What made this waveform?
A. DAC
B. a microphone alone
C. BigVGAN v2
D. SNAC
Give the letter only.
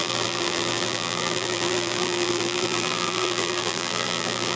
C